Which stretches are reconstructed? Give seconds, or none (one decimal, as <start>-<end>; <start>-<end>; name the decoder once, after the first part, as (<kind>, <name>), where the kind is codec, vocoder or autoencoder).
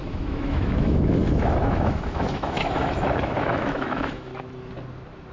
0.0-4.3 (autoencoder, DAC-VAE)